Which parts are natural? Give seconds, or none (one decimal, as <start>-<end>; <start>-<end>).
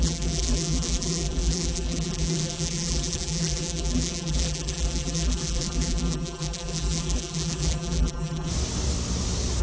8.5-9.6